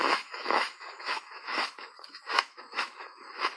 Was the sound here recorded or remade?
remade